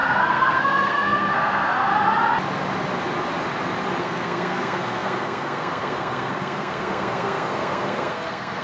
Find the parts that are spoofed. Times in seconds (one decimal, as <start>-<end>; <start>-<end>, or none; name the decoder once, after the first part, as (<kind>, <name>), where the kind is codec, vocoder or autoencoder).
0.0-1.9 (codec, SNAC); 4.0-8.6